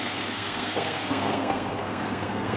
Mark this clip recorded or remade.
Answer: remade